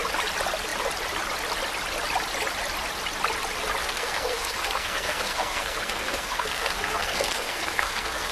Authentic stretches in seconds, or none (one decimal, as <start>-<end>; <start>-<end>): 0.0-3.8